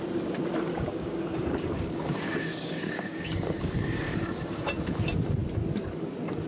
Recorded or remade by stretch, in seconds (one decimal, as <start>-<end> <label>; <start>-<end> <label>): 0.0-0.7 recorded; 0.7-4.6 remade; 4.6-6.5 recorded